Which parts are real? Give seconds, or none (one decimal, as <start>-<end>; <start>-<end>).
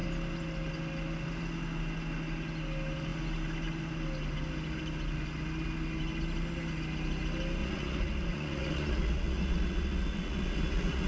0.0-7.6